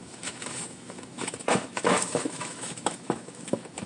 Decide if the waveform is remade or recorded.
remade